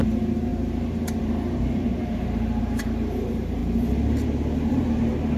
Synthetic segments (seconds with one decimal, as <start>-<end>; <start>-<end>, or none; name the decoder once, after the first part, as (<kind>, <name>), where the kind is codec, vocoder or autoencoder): 0.0-3.6 (vocoder, BigVGAN v2); 4.7-5.4